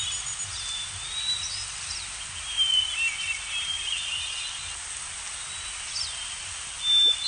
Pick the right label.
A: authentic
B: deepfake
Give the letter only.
A